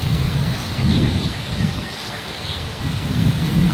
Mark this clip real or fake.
fake